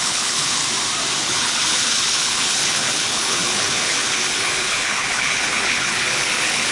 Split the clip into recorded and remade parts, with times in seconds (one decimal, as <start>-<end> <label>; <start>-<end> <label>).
0.0-0.6 remade; 0.6-1.2 recorded; 1.2-6.7 remade